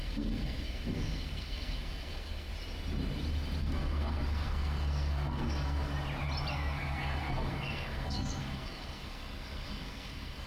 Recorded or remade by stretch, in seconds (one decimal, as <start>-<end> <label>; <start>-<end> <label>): 0.0-2.5 remade; 2.5-3.6 recorded; 3.6-5.9 remade; 5.9-6.5 recorded; 6.5-10.5 remade